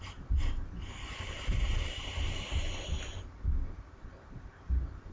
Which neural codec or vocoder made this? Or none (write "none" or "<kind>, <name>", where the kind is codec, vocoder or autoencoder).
none